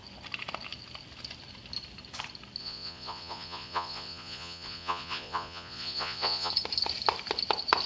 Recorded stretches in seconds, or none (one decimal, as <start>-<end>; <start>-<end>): 0.0-2.6; 6.5-7.9